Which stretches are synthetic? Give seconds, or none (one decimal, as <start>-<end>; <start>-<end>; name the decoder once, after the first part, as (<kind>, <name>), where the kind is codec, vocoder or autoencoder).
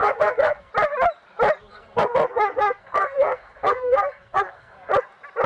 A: 0.0-0.7 (codec, SNAC); 1.6-4.9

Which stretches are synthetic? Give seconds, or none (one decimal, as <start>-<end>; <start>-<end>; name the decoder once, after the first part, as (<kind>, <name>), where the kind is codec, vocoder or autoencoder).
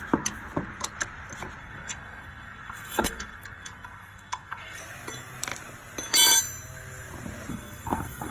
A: 1.6-4.8 (codec, SNAC); 7.5-8.3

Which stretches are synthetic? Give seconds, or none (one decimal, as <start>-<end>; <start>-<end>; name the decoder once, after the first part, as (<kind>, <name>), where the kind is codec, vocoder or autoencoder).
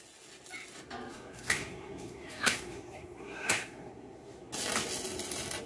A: 1.1-4.5 (codec, SNAC)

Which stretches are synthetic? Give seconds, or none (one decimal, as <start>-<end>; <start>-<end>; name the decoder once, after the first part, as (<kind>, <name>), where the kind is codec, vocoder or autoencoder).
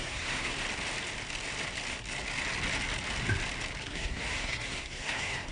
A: 0.0-0.5 (codec, SNAC); 3.8-5.5